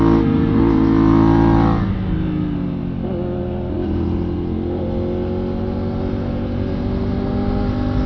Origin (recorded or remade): recorded